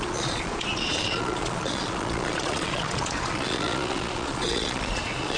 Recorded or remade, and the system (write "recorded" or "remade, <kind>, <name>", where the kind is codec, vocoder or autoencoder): remade, vocoder, Vocos